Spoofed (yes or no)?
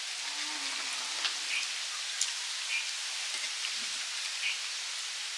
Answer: no